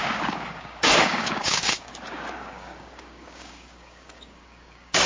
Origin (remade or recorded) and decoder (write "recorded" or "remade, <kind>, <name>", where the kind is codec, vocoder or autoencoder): remade, codec, DAC